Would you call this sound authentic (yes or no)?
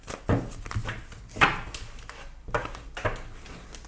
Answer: yes